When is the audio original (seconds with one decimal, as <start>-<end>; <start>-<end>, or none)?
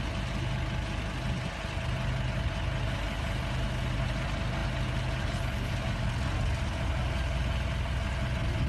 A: 0.0-8.7